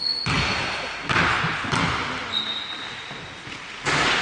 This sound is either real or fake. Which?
real